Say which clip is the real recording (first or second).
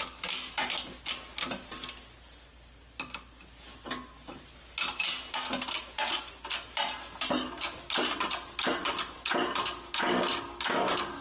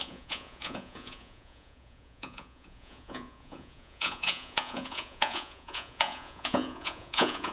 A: first